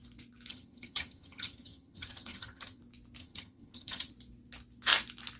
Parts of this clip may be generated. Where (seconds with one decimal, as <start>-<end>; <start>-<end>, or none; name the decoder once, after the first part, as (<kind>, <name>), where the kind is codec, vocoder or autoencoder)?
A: 0.5-2.8 (vocoder, HiFi-GAN); 3.2-4.1